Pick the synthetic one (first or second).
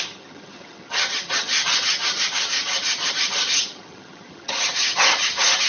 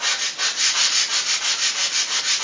first